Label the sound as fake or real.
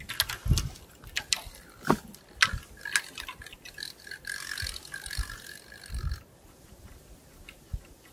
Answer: real